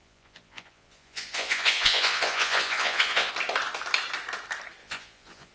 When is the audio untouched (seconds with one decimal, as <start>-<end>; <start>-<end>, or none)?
3.3-4.8